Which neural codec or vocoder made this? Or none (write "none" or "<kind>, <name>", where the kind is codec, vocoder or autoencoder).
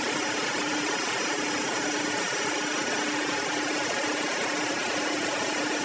none